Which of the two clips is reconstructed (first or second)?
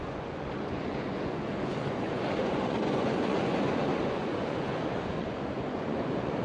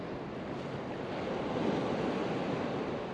first